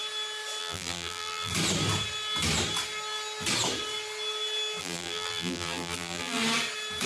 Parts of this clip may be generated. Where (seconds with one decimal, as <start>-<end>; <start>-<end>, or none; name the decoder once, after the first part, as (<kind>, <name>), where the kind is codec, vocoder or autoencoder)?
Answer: 0.6-1.5 (vocoder, BigVGAN v2); 4.8-6.4